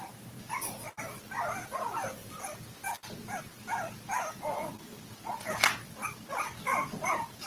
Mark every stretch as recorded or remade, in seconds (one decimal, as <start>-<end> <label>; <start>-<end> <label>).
0.0-0.5 remade; 0.5-2.2 recorded; 2.2-3.4 remade; 3.4-7.5 recorded